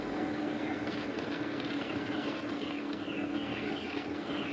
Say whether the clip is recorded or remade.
remade